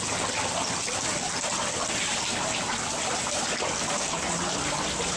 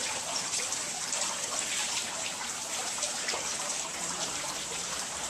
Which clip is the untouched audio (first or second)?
first